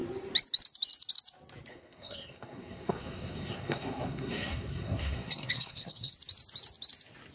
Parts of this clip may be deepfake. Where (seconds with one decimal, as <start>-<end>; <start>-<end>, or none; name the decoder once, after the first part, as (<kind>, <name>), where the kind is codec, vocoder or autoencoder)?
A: 1.7-6.1 (codec, SNAC)